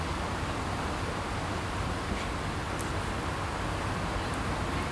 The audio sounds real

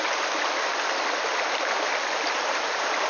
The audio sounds real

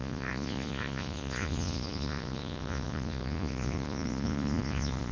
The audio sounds fake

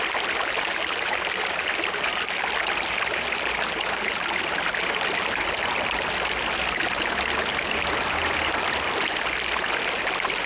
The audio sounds real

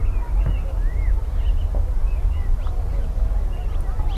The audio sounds real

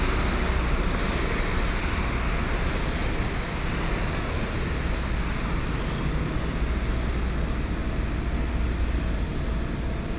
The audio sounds real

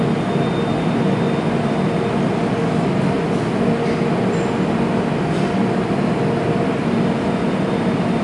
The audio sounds real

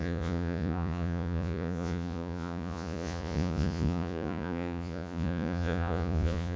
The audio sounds fake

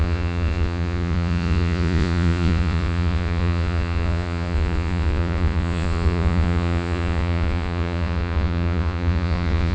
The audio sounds fake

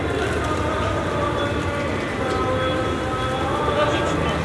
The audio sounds real